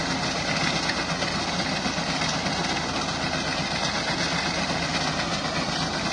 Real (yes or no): yes